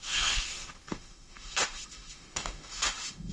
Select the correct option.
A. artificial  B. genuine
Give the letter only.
A